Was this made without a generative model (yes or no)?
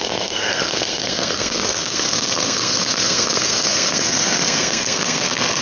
no